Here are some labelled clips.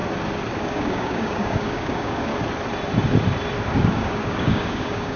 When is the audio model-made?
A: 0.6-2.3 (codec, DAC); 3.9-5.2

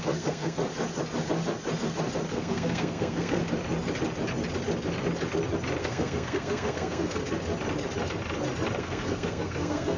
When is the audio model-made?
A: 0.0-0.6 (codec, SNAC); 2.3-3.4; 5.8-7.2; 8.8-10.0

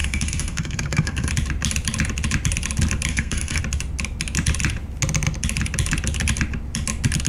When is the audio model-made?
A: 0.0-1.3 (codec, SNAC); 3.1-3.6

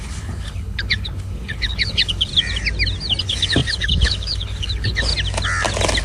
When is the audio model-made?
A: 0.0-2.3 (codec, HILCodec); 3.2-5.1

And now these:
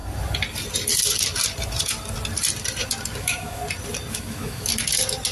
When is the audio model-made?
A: 3.2-3.6 (autoencoder, DAC-VAE); 4.1-4.7

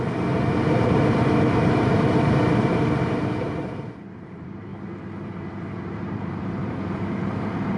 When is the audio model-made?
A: 0.0-4.7 (vocoder, BigVGAN v2); 5.7-7.8

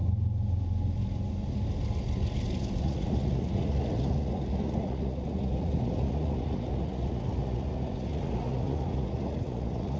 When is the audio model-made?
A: 2.8-10.0 (vocoder, Vocos)

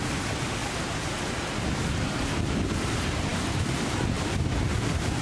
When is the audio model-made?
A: 3.3-5.2 (vocoder, BigVGAN v2)